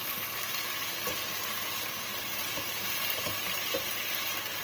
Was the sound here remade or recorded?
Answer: recorded